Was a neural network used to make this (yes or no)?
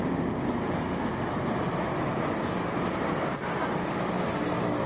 no